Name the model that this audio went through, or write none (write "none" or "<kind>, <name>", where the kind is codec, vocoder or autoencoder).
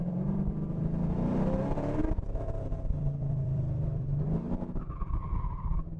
vocoder, BigVGAN v2